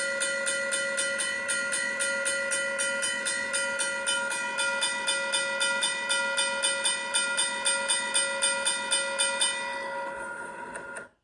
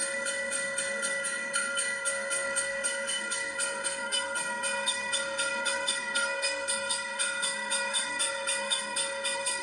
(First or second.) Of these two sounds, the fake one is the second